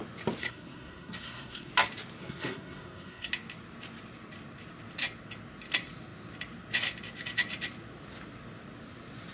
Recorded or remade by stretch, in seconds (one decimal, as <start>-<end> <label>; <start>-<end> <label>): 0.0-0.4 recorded; 0.4-1.7 remade; 1.7-2.2 recorded; 2.2-3.3 remade; 3.3-9.3 recorded